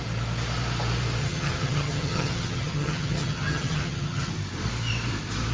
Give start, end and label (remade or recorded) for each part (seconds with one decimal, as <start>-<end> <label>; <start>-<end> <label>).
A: 0.0-1.2 recorded; 1.2-4.3 remade; 4.3-5.5 recorded